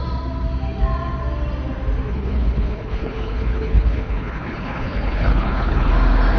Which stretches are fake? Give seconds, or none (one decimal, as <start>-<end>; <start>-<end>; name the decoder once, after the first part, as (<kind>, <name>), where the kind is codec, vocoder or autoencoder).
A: 2.1-5.9 (codec, HILCodec)